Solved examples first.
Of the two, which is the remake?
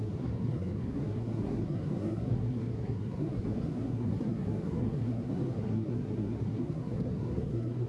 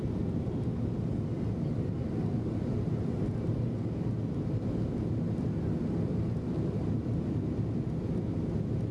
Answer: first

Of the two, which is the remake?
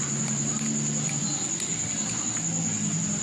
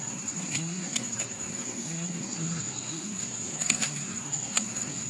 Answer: second